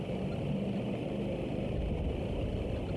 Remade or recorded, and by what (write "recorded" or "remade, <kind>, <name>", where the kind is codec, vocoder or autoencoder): recorded